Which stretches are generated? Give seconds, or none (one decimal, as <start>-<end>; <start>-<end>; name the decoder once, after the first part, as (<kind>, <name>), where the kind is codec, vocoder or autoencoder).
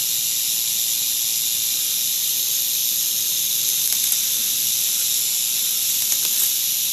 none